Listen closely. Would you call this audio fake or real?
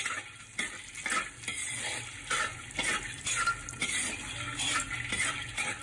real